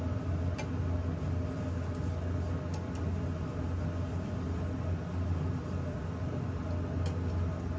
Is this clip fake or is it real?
real